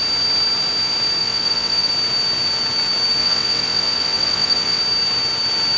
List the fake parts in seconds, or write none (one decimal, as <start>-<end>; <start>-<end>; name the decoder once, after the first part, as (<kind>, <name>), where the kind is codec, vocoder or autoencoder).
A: 1.2-1.9 (vocoder, WaveNeXt); 3.2-4.8